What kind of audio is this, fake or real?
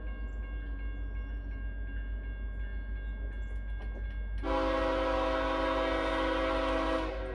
real